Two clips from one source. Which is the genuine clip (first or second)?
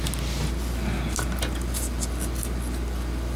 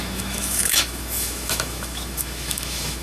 first